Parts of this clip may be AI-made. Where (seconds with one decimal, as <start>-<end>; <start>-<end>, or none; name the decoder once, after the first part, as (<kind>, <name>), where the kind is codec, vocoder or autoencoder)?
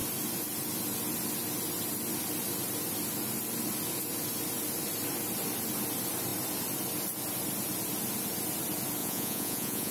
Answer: 9.0-9.9 (vocoder, Vocos)